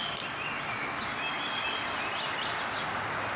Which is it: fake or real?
real